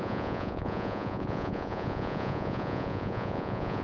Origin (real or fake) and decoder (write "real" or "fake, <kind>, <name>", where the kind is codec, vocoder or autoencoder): fake, vocoder, Vocos